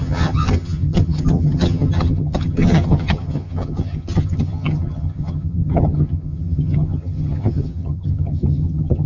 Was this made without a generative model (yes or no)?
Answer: no